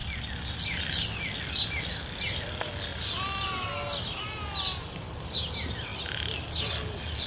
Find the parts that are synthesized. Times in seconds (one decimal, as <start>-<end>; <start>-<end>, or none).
none

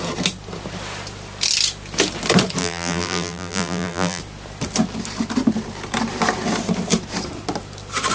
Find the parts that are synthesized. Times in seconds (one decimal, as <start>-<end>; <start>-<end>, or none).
2.6-4.2

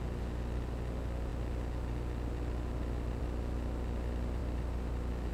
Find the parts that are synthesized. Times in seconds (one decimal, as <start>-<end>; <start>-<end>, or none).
4.4-5.3

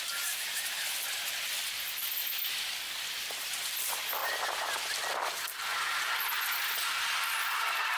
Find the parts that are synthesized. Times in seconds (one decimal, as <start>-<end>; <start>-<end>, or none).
0.0-4.2; 5.1-5.7; 7.4-8.0